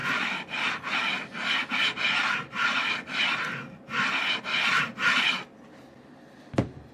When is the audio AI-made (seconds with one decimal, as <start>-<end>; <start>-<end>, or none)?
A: none

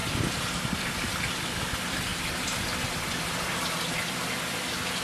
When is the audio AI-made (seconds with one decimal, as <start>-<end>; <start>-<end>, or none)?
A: 0.0-2.1; 4.1-5.0

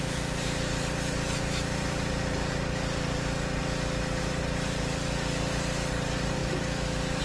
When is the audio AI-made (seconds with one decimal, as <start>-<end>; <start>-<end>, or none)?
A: 0.0-3.6; 4.2-5.0; 5.9-6.4

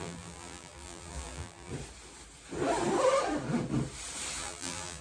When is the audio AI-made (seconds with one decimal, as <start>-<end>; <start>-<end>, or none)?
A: 0.0-1.7; 4.4-5.0

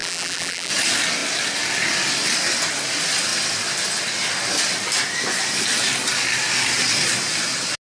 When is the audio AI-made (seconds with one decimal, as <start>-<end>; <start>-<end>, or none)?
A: 0.0-0.7